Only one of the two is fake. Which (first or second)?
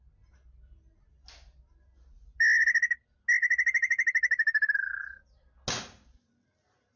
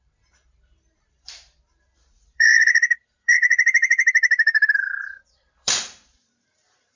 second